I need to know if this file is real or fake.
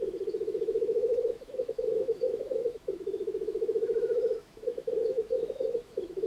fake